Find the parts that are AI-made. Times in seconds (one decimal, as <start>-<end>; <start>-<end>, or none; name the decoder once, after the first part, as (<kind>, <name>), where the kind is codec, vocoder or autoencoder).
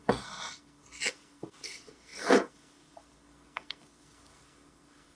0.0-5.2 (codec, SNAC)